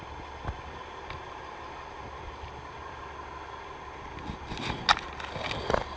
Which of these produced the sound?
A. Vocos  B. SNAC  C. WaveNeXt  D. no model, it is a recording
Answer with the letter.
D